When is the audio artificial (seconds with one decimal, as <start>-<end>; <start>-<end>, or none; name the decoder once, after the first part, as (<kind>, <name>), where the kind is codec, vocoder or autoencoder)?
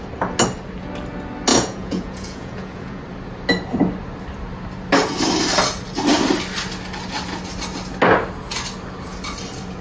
1.5-3.0 (vocoder, Vocos)